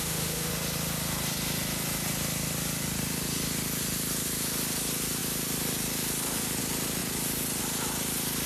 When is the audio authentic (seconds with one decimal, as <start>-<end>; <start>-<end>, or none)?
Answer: 0.5-8.5